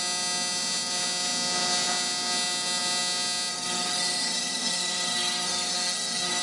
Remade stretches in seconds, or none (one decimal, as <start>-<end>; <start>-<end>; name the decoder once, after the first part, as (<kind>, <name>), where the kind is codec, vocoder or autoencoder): 3.5-6.4 (codec, SNAC)